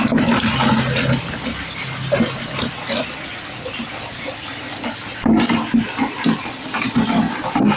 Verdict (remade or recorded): recorded